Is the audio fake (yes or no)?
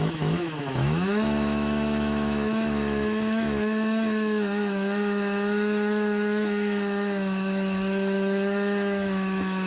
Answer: yes